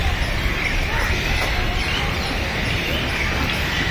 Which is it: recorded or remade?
recorded